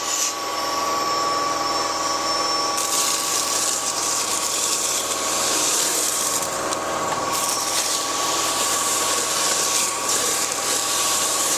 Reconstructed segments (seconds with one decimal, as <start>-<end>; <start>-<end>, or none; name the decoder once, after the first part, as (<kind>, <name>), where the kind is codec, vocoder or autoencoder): 0.0-0.5 (vocoder, BigVGAN v2); 3.3-11.6